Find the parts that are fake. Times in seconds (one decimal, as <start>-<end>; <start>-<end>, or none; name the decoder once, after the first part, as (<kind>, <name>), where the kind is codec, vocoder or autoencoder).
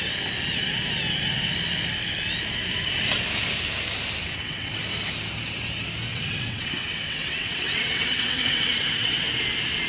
4.2-4.7 (vocoder, WaveNeXt); 6.1-9.3